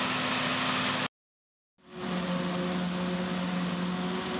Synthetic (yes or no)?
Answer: no